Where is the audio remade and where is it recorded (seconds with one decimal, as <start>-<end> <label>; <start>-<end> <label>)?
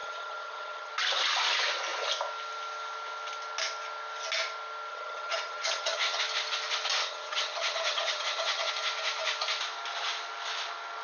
0.0-0.9 remade; 0.9-4.9 recorded; 4.9-6.2 remade; 6.2-7.0 recorded; 7.0-8.7 remade; 8.7-11.0 recorded